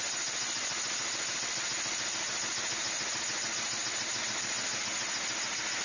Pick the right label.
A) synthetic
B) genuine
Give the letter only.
B